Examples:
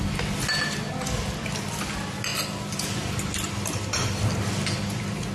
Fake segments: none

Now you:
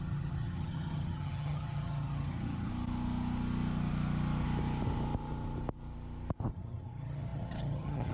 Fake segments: 0.0-2.7 (vocoder, HiFi-GAN); 6.5-8.1

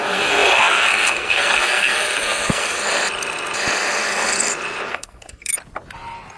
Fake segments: 0.0-2.8 (codec, SNAC); 4.9-5.5

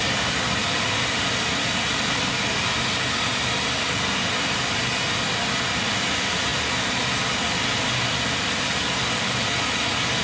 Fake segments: none

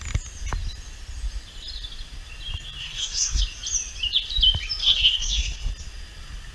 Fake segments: 2.8-3.4 (codec, SNAC); 4.8-5.7

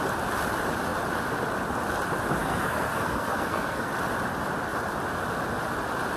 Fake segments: 2.4-3.9 (codec, SNAC)

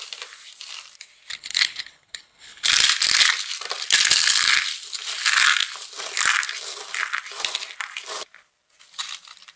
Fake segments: 1.3-2.7 (codec, HILCodec)

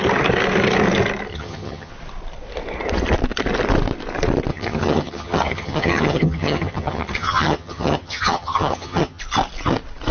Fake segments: 1.3-1.9 (vocoder, HiFi-GAN); 4.5-9.2